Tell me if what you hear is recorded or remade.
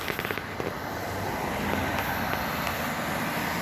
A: recorded